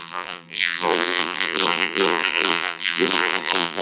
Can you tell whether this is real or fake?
fake